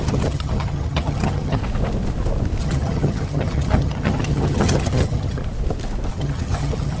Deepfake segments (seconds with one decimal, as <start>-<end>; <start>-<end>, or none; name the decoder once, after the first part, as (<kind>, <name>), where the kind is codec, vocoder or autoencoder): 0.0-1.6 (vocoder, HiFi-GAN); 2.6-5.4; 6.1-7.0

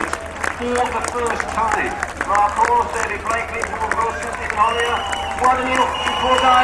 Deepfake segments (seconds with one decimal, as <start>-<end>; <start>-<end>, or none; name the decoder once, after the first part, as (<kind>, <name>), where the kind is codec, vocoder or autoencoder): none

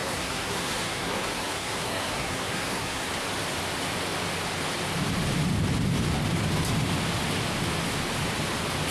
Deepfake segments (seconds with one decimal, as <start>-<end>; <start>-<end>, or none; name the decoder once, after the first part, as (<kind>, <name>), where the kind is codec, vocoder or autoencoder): 0.0-3.1 (codec, SNAC)

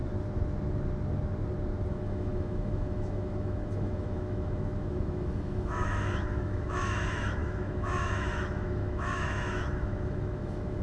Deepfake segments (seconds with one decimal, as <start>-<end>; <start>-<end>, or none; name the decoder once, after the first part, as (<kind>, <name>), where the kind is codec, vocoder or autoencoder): 1.9-10.8 (autoencoder, DAC-VAE)